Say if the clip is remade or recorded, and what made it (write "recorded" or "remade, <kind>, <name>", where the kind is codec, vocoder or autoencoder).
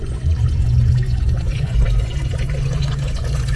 remade, vocoder, Vocos